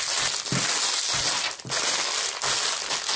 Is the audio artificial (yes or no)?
no